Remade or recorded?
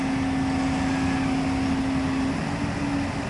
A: recorded